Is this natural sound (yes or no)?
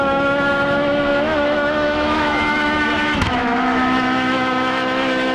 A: no